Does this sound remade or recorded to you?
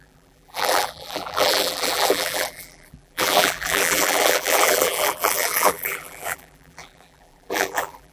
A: remade